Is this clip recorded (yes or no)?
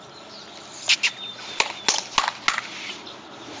yes